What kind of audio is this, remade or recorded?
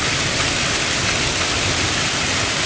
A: recorded